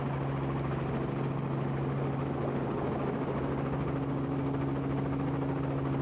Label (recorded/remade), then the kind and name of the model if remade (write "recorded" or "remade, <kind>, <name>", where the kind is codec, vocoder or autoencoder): recorded